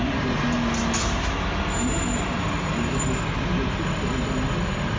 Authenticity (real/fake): real